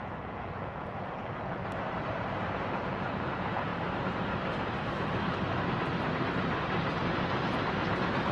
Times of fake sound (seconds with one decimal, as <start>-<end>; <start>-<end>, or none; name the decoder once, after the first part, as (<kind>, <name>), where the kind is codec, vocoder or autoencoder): 0.0-1.6 (vocoder, Vocos); 2.7-3.7